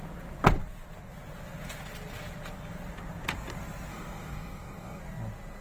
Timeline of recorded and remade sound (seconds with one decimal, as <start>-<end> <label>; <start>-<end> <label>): 0.0-3.9 recorded; 3.9-5.0 remade; 5.0-5.6 recorded